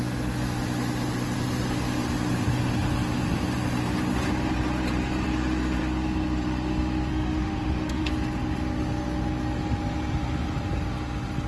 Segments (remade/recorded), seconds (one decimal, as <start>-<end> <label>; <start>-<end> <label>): 0.0-7.1 recorded; 7.1-8.1 remade; 8.1-11.5 recorded